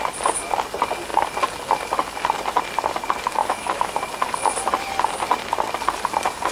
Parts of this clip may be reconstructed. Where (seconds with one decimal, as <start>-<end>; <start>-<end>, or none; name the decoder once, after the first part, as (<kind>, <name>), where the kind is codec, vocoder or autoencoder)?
3.4-4.0 (autoencoder, DAC-VAE)